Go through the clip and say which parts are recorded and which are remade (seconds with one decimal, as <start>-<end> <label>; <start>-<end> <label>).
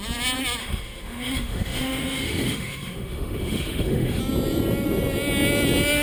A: 0.0-0.6 recorded; 0.6-4.2 remade; 4.2-6.0 recorded